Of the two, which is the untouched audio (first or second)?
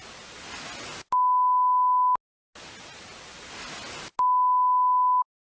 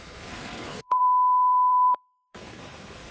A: first